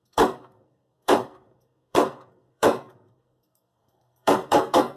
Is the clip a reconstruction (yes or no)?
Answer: yes